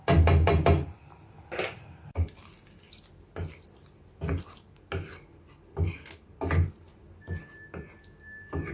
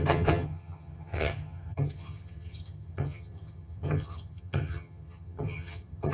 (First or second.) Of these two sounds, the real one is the first